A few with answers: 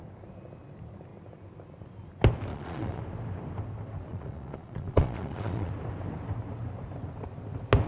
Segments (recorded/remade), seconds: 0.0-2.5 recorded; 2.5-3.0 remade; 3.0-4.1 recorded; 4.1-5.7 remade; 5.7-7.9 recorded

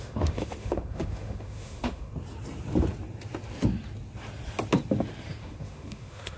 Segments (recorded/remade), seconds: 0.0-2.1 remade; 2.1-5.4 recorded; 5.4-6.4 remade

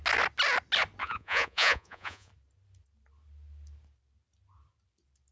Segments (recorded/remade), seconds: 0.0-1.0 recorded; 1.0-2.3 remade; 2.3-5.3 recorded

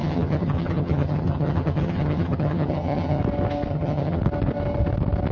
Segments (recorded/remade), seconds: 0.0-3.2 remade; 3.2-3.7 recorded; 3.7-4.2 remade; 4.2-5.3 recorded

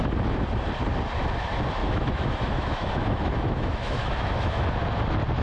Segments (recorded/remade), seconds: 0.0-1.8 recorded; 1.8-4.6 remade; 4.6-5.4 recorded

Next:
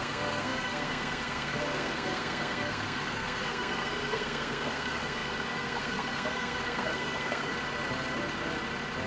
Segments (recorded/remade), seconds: 0.0-7.5 remade; 7.5-9.1 recorded

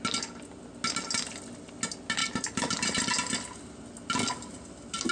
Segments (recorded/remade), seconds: 0.0-2.2 recorded; 2.2-3.0 remade; 3.0-5.1 recorded